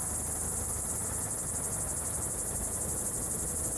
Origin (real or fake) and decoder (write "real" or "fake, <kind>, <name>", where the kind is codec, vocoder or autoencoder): real